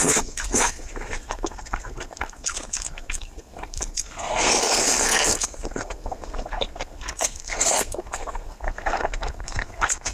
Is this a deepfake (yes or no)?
yes